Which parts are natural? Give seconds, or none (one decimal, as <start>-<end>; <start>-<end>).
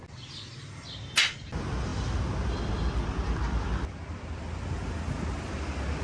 0.0-6.0